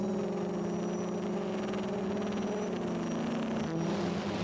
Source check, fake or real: real